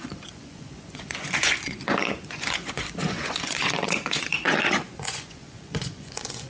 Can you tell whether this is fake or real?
fake